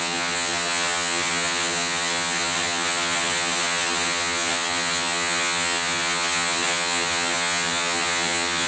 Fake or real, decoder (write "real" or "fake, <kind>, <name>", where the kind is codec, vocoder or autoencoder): fake, vocoder, HiFi-GAN